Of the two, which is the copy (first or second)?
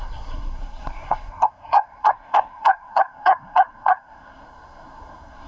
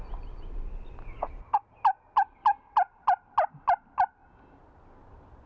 first